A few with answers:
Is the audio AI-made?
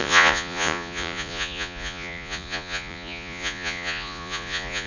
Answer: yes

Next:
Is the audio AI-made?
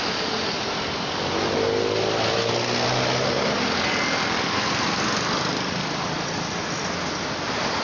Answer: no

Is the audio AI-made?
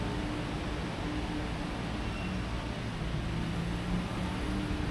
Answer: no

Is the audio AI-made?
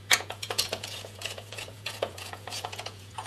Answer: yes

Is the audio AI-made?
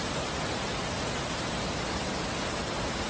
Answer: no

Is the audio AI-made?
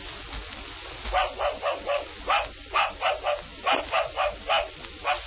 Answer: no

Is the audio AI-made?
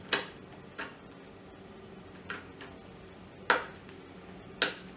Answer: no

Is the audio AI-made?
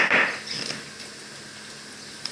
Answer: no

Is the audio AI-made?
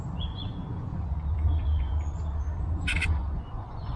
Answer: yes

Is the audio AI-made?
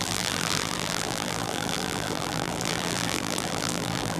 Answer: yes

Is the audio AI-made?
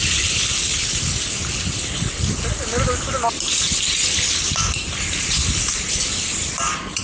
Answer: no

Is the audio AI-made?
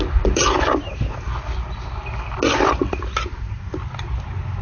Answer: no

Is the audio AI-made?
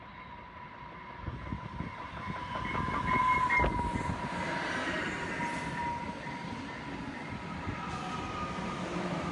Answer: no